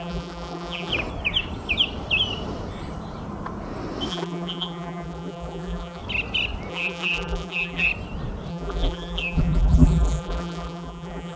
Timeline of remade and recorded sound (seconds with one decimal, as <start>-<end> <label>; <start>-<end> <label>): 0.0-0.9 remade; 0.9-4.1 recorded; 4.1-6.0 remade; 6.0-6.7 recorded; 6.7-7.9 remade; 7.9-8.5 recorded; 8.5-11.4 remade